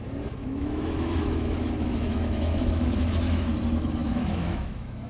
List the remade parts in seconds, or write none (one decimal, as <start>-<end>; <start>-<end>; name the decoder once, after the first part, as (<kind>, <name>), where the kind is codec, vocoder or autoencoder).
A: 0.4-3.5 (autoencoder, DAC-VAE); 4.0-5.1